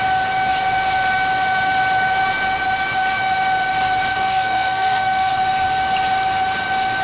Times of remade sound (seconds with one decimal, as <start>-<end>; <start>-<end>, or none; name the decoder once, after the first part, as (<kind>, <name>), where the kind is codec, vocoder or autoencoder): 4.1-5.3 (codec, SNAC)